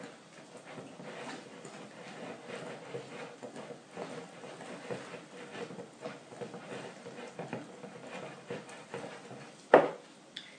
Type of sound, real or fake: real